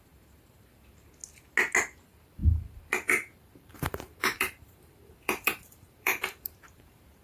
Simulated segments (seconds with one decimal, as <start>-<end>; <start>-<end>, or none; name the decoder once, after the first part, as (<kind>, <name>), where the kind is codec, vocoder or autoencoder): 0.0-1.2 (vocoder, BigVGAN v2); 2.0-7.2